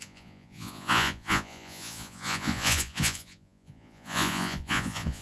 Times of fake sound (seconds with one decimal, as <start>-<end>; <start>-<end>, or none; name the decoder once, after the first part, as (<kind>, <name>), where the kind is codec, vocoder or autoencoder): 0.0-5.2 (vocoder, Vocos)